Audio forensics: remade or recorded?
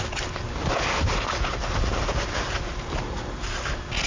recorded